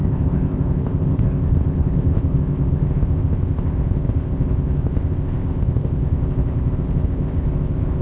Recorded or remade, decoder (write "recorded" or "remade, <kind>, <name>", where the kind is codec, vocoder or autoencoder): remade, codec, ZipCodec